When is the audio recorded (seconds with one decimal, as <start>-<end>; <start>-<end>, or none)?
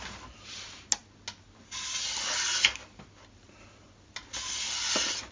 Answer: 0.0-5.3